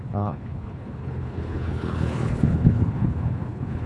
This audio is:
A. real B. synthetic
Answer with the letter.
B